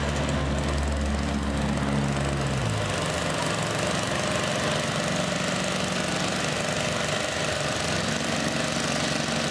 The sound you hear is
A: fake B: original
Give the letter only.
B